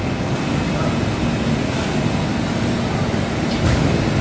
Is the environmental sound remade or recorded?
recorded